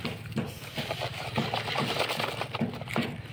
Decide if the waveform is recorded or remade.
recorded